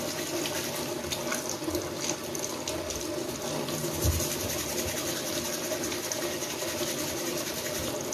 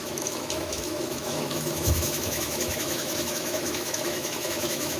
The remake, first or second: second